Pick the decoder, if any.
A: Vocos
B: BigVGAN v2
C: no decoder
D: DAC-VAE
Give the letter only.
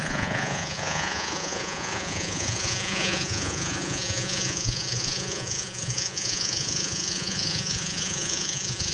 A